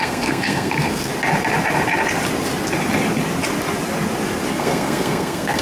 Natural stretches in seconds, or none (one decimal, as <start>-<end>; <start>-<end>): 1.1-4.5